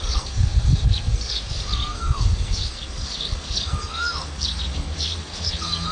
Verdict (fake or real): fake